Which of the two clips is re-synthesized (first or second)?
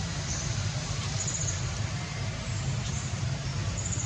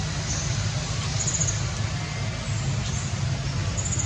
first